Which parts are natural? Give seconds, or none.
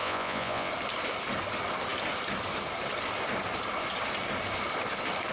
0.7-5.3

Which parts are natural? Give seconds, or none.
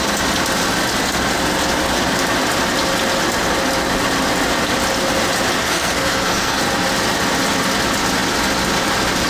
0.0-5.6; 6.6-9.3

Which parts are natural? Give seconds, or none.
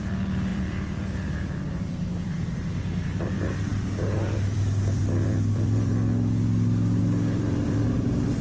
none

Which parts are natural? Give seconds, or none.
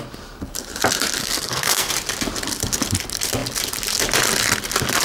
0.0-1.2; 1.9-5.0